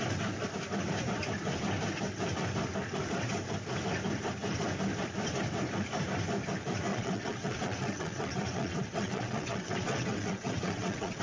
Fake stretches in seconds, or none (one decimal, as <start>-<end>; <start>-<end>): 6.9-11.2